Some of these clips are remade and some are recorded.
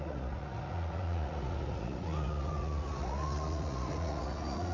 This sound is remade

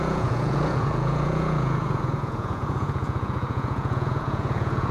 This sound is remade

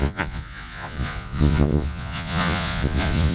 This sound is remade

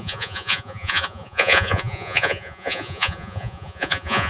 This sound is remade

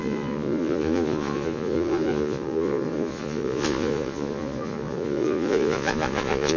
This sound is remade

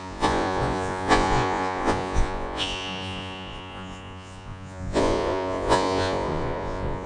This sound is remade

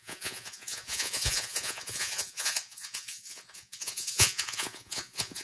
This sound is remade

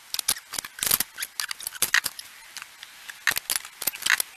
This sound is recorded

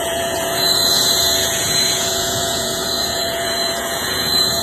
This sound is remade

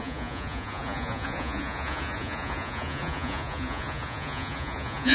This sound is remade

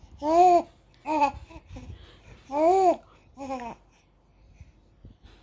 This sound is recorded